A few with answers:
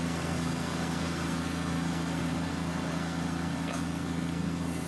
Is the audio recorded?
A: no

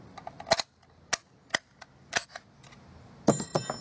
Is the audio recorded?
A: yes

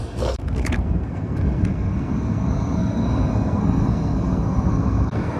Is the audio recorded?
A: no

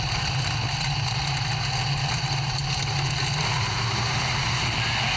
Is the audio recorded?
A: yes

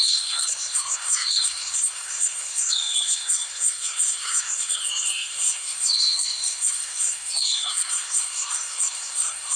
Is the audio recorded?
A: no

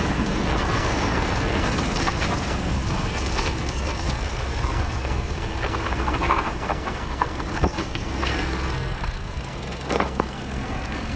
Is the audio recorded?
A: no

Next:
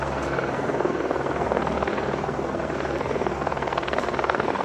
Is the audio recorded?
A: no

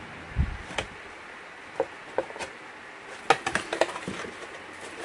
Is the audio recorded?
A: yes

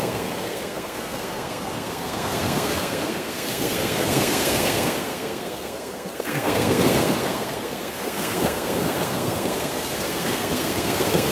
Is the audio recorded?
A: no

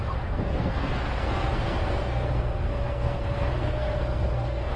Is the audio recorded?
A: no